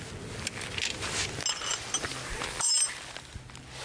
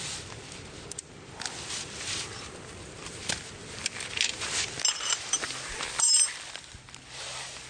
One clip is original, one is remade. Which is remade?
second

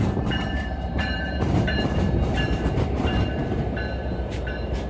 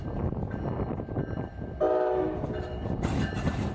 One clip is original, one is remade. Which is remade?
first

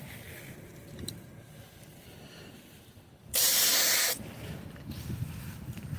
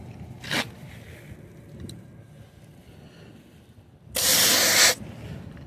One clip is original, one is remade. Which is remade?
first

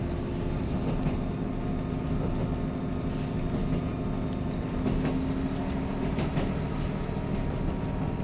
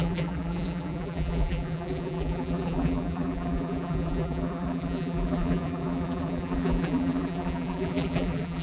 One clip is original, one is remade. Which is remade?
second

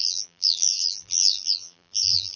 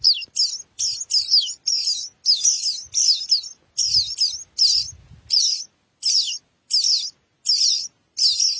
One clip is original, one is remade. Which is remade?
first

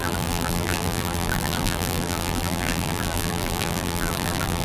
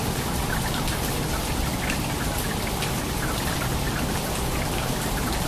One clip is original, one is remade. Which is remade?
first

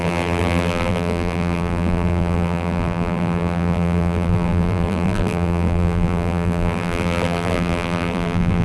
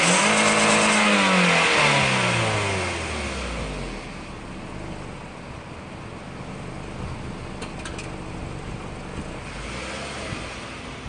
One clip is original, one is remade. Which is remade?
first